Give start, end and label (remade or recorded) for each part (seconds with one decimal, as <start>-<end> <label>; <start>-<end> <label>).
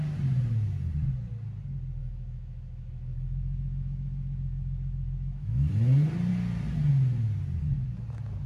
0.0-2.0 recorded; 2.0-5.7 remade; 5.7-8.5 recorded